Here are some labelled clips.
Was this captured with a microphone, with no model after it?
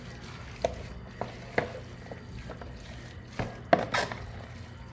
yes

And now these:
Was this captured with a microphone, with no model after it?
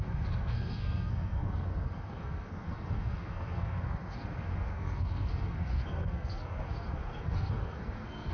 no